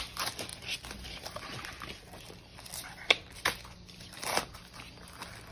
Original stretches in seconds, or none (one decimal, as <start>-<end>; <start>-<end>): 0.0-0.5; 1.4-2.5; 4.6-5.5